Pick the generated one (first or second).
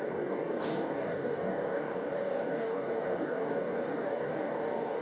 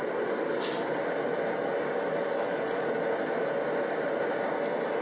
first